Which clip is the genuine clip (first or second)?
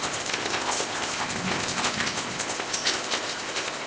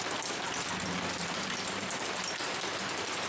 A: second